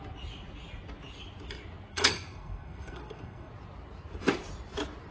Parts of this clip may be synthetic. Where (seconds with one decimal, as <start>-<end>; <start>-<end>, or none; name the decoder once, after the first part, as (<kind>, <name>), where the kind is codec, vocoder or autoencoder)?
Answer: 1.9-3.5 (codec, SNAC)